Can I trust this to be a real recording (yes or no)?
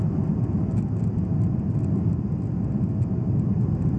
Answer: yes